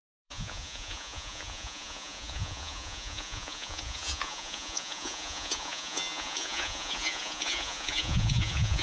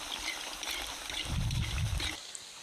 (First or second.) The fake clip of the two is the first